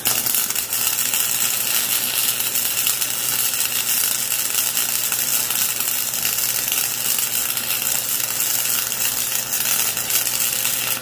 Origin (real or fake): real